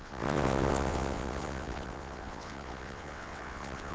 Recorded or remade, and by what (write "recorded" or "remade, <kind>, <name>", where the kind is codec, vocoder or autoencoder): remade, vocoder, WaveNeXt